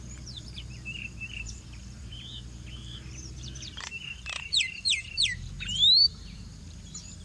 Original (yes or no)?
no